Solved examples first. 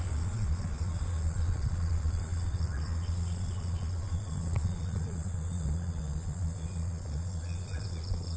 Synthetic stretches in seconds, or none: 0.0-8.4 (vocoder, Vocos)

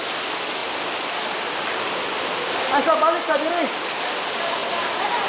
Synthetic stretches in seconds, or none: none